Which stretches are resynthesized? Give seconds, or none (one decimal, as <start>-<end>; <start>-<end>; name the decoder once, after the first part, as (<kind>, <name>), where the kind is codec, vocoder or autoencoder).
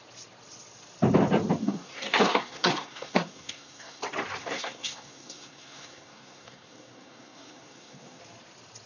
1.6-4.0 (codec, SNAC); 4.4-8.2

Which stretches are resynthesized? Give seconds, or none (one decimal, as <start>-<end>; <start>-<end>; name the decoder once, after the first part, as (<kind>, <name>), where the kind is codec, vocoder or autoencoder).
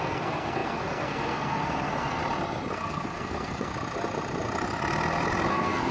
0.0-2.2 (codec, SNAC); 2.7-3.7; 5.5-5.9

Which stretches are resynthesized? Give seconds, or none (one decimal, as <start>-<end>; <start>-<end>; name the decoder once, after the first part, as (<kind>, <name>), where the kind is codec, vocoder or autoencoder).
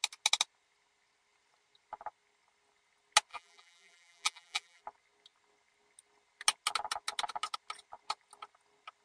3.3-4.8 (vocoder, BigVGAN v2)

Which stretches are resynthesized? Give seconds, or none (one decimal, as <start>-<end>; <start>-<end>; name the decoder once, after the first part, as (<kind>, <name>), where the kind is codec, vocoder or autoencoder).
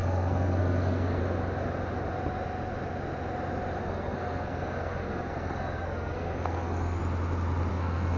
0.0-1.2 (codec, SNAC); 3.8-7.0; 7.7-8.2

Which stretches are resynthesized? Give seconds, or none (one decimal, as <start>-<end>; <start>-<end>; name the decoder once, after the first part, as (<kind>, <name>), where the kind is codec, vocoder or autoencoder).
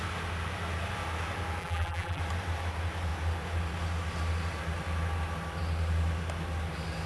1.6-2.2 (vocoder, BigVGAN v2)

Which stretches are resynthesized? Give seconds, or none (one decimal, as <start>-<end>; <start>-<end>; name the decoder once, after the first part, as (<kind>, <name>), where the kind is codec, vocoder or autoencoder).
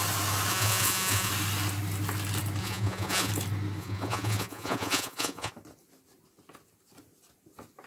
0.5-1.3 (vocoder, Vocos); 2.6-3.3; 3.8-5.5